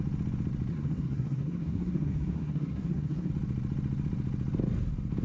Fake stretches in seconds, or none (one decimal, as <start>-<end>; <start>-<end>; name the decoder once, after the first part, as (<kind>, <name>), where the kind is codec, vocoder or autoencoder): 0.7-3.3 (codec, SNAC)